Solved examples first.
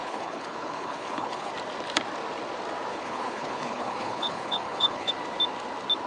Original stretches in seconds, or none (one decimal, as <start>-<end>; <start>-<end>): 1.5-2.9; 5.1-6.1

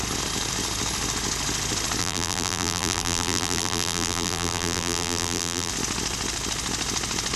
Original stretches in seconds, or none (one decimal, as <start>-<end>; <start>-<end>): 0.0-2.0; 5.7-7.4

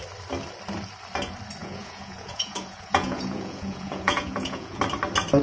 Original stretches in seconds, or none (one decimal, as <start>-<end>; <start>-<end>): 0.0-1.6; 4.8-5.4

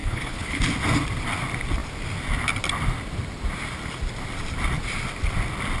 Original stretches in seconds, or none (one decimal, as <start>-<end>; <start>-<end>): 0.6-5.8